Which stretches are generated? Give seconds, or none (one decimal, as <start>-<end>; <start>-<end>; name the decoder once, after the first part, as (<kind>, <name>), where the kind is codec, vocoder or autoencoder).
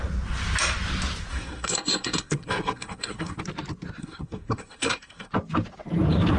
1.3-3.4 (codec, SNAC); 4.0-5.3